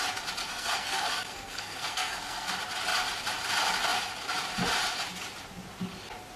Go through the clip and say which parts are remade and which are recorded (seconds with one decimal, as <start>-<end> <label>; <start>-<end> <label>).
0.0-0.4 recorded; 0.4-2.5 remade; 2.5-6.4 recorded